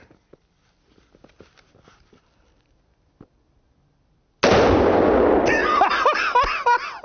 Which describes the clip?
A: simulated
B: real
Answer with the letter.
B